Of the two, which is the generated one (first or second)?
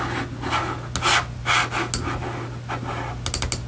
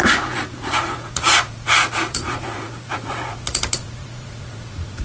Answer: second